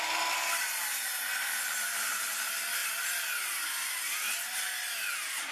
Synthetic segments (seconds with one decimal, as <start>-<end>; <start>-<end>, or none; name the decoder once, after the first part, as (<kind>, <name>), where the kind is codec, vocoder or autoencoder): none

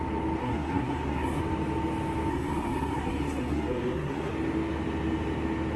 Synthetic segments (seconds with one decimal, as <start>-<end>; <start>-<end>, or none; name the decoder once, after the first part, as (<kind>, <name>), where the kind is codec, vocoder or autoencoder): 0.4-1.4 (codec, SNAC); 2.3-4.3